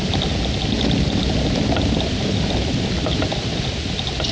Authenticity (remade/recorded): recorded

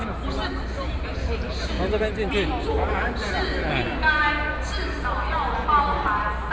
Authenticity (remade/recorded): recorded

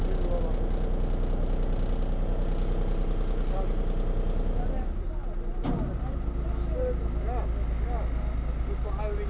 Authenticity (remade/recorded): recorded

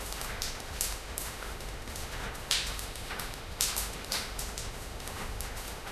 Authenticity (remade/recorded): remade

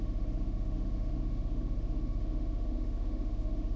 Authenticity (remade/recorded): remade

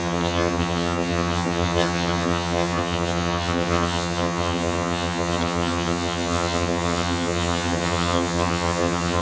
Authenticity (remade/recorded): remade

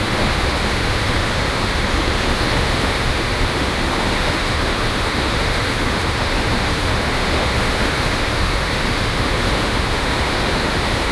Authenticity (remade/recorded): remade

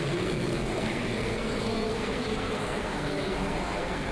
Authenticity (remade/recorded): remade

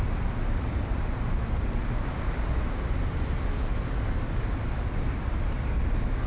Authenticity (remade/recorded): recorded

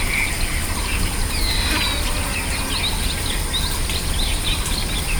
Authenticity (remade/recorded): recorded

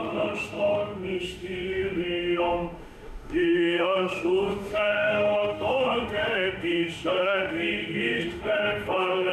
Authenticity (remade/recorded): remade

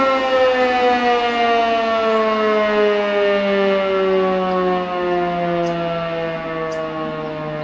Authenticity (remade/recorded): recorded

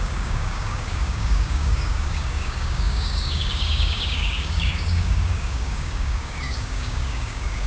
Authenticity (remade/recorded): remade